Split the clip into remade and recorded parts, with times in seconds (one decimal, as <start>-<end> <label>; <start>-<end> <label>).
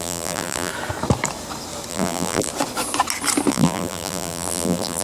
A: 0.0-0.7 remade; 0.7-1.9 recorded; 1.9-2.5 remade; 2.5-3.5 recorded; 3.5-5.0 remade